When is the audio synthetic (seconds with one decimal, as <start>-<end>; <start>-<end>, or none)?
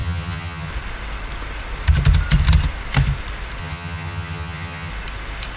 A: 0.0-0.7; 3.6-4.9